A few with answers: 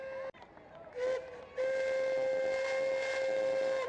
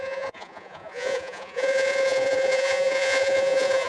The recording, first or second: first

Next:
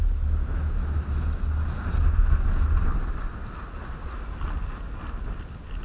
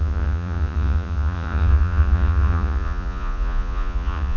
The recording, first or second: first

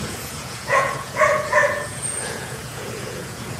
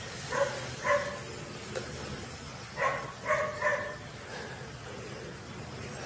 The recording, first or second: second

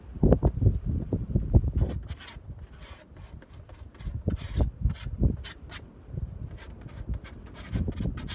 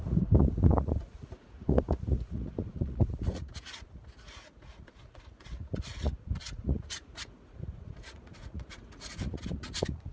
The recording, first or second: first